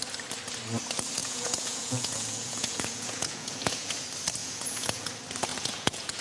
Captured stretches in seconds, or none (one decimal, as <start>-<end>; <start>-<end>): 0.0-1.2; 3.9-4.4; 5.1-5.5